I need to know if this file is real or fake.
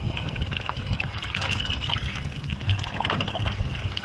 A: fake